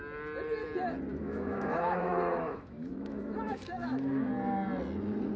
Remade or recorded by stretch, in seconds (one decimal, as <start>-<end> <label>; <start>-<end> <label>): 0.0-1.1 recorded; 1.1-4.3 remade; 4.3-5.4 recorded

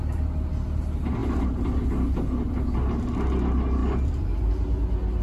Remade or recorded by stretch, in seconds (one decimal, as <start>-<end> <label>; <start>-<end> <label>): 0.0-5.2 recorded

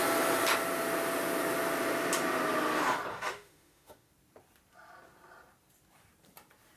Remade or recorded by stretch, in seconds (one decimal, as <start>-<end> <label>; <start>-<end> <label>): 0.0-3.1 recorded; 3.1-4.1 remade; 4.1-6.8 recorded

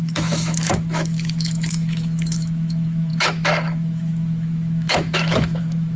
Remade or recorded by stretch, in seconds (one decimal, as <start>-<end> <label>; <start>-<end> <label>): 0.0-6.0 remade

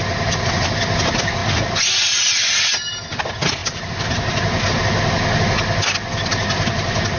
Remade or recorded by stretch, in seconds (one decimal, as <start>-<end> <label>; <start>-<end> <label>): 0.0-7.2 recorded